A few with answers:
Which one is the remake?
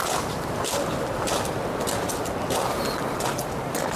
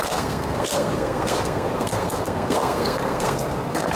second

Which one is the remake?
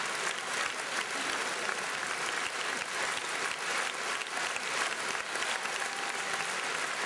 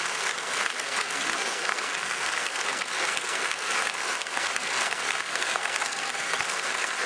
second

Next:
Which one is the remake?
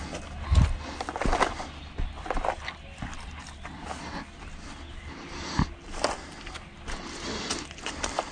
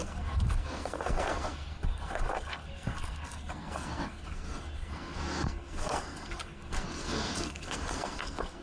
second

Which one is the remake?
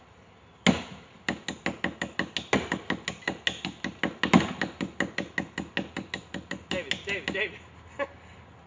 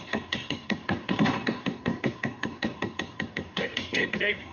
second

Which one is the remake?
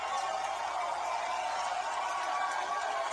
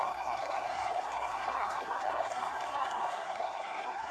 second